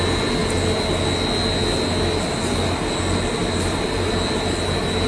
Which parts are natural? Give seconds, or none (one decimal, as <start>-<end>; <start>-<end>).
0.0-3.4; 4.1-5.1